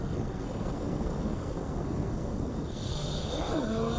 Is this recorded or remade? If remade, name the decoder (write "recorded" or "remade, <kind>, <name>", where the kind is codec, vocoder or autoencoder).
remade, codec, SNAC